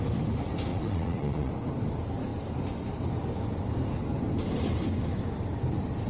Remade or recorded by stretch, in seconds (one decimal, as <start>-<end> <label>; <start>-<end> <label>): 0.0-0.7 recorded; 0.7-1.5 remade; 1.5-6.1 recorded